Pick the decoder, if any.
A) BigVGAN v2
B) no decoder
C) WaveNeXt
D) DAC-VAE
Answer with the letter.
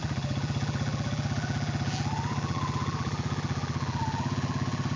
A